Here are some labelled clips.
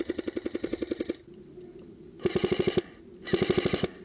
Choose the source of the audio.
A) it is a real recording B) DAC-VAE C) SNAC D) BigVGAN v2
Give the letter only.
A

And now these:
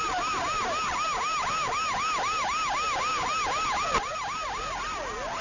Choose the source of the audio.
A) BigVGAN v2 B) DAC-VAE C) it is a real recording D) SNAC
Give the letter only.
C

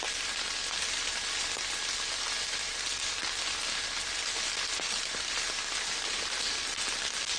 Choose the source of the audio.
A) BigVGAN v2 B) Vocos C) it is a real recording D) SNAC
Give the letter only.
C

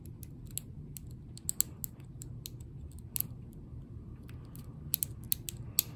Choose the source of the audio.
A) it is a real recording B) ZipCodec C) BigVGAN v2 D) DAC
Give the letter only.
A